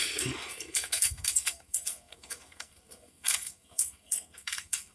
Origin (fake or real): fake